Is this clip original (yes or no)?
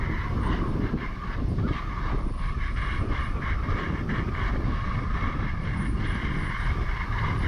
no